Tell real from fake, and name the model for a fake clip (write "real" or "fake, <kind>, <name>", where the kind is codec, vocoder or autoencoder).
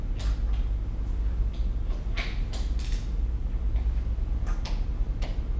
real